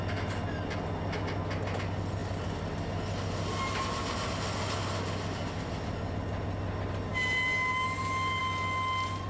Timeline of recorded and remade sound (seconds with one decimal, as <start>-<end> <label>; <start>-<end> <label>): 0.0-9.3 recorded